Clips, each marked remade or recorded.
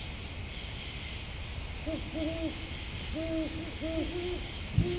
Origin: recorded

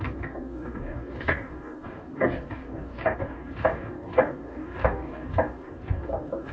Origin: remade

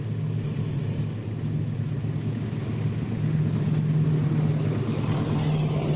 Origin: recorded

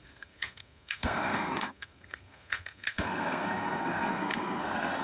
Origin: remade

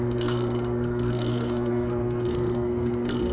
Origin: remade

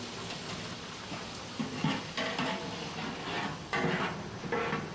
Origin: recorded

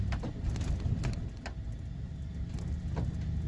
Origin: recorded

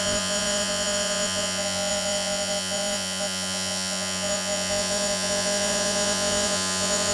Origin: remade